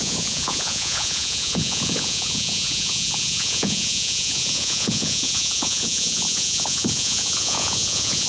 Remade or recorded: remade